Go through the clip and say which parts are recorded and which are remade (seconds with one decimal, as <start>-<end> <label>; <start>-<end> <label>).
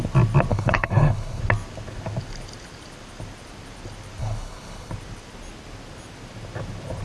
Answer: 0.0-0.5 recorded; 0.5-1.4 remade; 1.4-4.2 recorded; 4.2-4.9 remade; 4.9-7.0 recorded